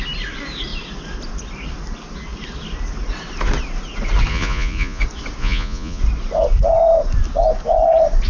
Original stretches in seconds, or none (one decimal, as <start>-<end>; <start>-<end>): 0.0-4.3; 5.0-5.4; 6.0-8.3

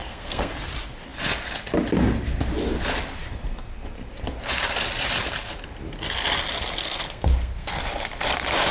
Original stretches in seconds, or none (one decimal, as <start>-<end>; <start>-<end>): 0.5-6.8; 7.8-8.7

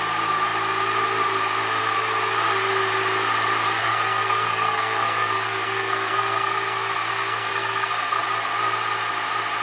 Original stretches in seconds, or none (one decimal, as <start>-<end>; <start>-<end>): 0.0-3.8; 8.2-9.6